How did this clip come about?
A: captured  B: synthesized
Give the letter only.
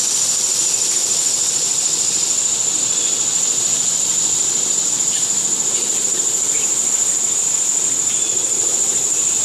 A